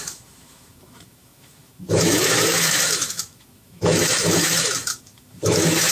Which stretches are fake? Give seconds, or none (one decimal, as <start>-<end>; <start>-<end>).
0.0-5.9